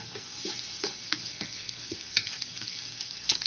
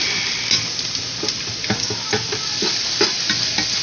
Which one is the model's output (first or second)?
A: first